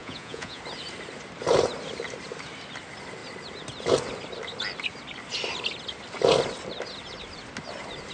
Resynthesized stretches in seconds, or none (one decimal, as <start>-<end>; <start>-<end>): 0.0-0.6